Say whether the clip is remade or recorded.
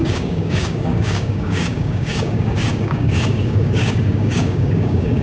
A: remade